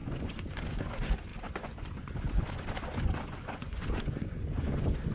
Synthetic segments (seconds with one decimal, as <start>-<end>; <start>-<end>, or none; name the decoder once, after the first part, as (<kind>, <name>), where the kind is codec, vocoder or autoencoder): 0.0-5.1 (vocoder, Vocos)